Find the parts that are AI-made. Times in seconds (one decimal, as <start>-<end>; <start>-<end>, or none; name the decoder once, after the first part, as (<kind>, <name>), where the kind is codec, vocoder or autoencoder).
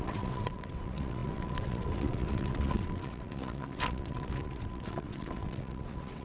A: 0.0-6.2 (vocoder, WaveNeXt)